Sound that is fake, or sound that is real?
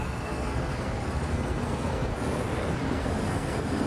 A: fake